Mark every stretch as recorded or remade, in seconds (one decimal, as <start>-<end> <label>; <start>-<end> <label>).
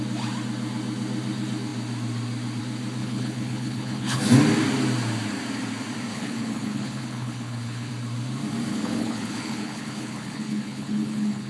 0.0-3.0 recorded; 3.0-4.2 remade; 4.2-6.1 recorded; 6.1-7.9 remade; 7.9-8.7 recorded; 8.7-11.5 remade